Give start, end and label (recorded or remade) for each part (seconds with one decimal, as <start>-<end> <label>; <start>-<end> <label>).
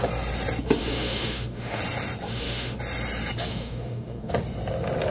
0.0-0.8 recorded; 0.8-1.8 remade; 1.8-2.3 recorded; 2.3-2.8 remade; 2.8-3.5 recorded; 3.5-4.3 remade; 4.3-5.1 recorded